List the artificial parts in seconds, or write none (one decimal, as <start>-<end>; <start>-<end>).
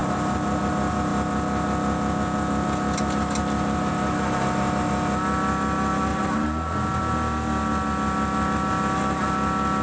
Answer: 0.0-0.7; 6.1-7.0